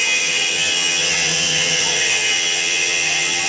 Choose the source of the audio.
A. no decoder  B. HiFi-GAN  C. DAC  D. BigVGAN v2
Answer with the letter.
B